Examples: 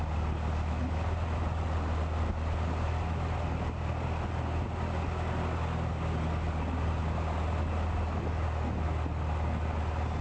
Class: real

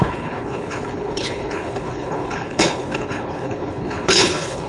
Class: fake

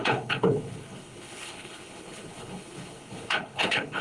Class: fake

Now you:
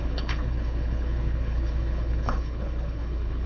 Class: fake